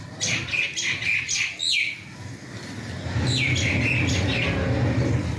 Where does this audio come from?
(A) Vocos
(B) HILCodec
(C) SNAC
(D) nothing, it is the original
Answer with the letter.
D